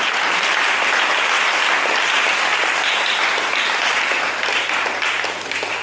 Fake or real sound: real